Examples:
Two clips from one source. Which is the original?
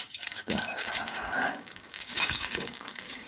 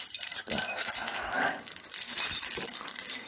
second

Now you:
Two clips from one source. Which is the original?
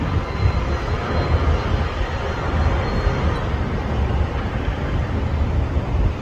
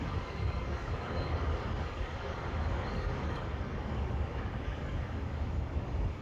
first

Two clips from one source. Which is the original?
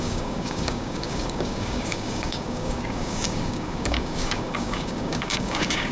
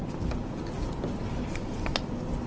second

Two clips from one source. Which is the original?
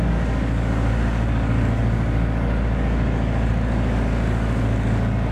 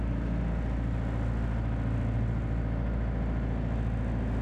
second